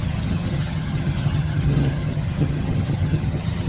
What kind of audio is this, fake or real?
fake